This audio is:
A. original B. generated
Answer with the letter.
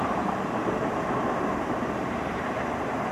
B